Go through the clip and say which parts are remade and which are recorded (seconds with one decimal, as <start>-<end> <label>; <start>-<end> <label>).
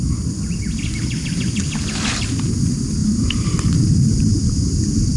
0.0-3.0 recorded; 3.0-4.5 remade; 4.5-5.2 recorded